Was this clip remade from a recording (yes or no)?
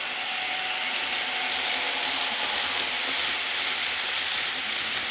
no